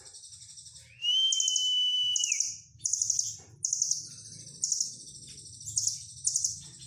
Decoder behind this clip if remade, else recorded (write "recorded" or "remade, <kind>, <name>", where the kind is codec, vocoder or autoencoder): recorded